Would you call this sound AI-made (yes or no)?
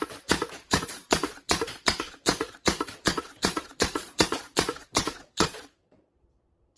yes